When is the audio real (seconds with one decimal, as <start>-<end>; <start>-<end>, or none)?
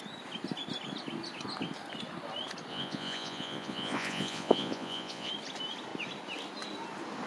0.0-2.7; 5.3-7.3